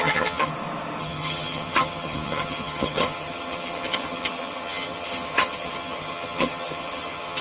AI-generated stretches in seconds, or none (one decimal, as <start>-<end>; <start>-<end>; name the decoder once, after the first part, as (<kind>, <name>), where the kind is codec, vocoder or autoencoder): 0.0-0.5 (vocoder, HiFi-GAN); 1.0-7.4